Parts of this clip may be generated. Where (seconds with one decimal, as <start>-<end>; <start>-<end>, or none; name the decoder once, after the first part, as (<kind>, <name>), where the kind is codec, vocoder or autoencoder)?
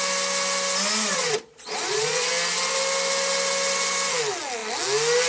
1.1-2.3 (vocoder, Vocos)